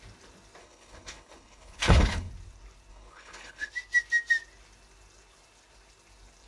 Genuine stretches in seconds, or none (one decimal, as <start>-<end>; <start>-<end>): 0.0-0.6; 2.3-2.9; 3.7-6.5